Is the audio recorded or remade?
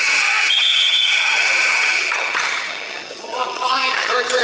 remade